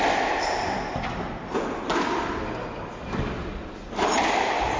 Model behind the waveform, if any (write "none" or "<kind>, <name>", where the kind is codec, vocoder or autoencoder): none